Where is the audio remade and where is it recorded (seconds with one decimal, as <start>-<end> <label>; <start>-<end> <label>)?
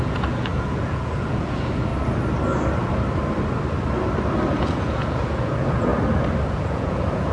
0.0-1.9 remade; 1.9-4.5 recorded; 4.5-5.9 remade; 5.9-6.5 recorded; 6.5-7.3 remade